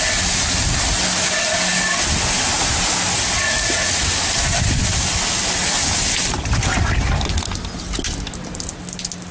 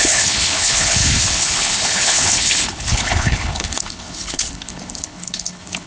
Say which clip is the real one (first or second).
first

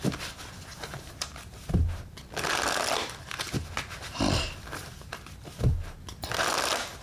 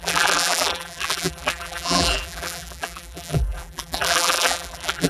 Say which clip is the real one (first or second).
first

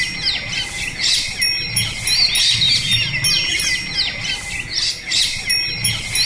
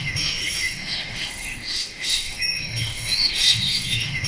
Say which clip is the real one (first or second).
first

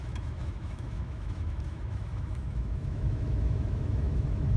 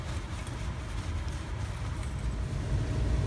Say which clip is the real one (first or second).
second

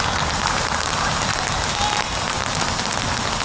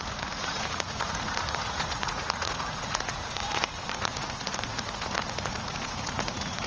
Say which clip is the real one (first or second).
first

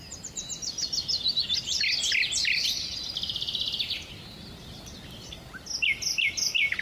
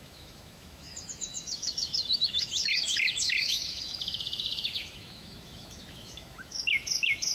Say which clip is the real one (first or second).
first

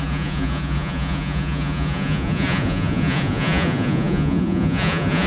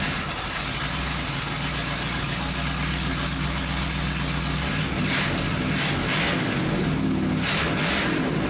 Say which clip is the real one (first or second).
second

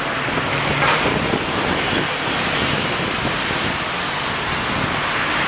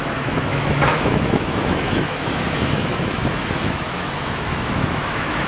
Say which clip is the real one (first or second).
first